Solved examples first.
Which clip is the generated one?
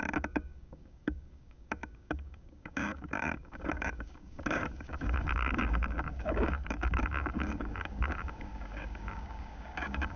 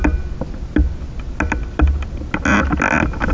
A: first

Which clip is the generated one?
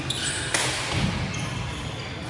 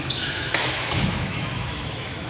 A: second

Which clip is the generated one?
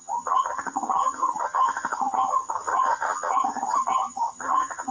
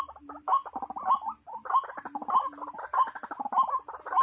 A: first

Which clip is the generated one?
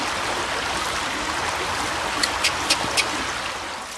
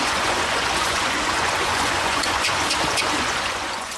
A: second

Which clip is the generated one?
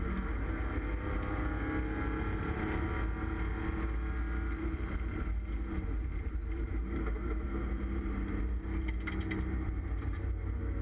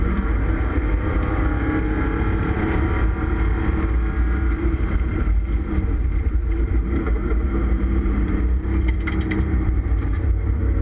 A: second